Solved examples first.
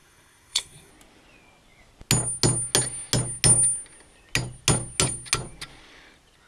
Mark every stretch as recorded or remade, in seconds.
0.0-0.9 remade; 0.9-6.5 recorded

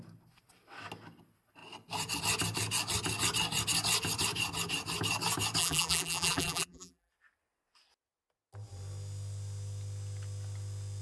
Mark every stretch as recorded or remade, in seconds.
0.0-5.6 recorded; 5.6-7.1 remade; 7.1-11.0 recorded

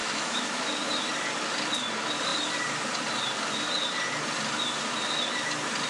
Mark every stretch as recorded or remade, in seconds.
0.0-0.7 remade; 0.7-5.9 recorded

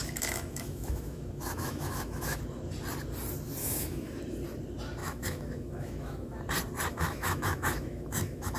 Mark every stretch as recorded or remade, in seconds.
0.0-2.4 remade; 2.4-3.6 recorded; 3.6-4.2 remade; 4.2-5.0 recorded; 5.0-6.4 remade; 6.4-6.9 recorded; 6.9-8.6 remade

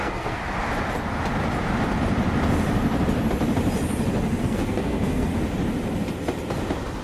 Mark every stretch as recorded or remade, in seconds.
0.0-0.4 remade; 0.4-4.4 recorded; 4.4-5.3 remade; 5.3-7.0 recorded

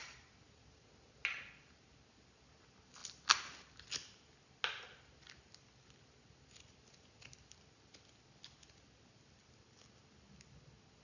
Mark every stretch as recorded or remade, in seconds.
0.0-11.0 recorded

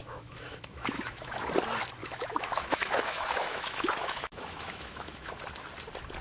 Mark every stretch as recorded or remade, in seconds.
0.0-1.5 remade; 1.5-2.0 recorded; 2.0-5.3 remade; 5.3-6.2 recorded